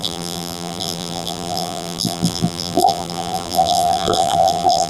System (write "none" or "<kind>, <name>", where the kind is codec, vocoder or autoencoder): vocoder, BigVGAN v2